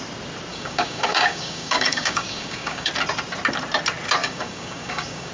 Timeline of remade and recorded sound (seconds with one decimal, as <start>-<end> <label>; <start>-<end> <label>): 0.0-0.5 recorded; 0.5-2.9 remade; 2.9-4.2 recorded; 4.2-5.3 remade